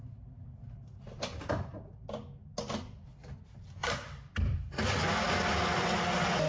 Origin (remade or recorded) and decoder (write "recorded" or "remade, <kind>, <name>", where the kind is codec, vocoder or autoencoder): recorded